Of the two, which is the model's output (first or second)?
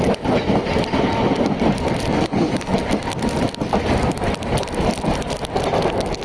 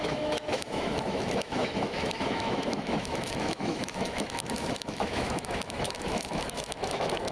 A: second